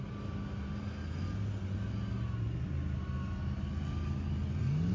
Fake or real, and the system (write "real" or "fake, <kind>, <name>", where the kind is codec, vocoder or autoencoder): real